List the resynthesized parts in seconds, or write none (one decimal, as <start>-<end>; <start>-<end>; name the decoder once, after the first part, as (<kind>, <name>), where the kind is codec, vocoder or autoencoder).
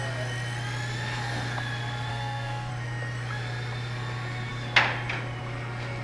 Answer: 2.1-2.7 (codec, SNAC)